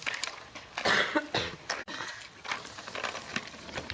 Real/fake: real